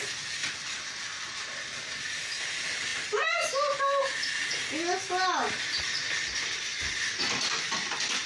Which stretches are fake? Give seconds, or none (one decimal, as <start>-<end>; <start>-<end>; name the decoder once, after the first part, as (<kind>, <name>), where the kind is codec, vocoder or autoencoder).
none